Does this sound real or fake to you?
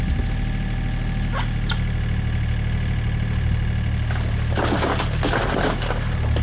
real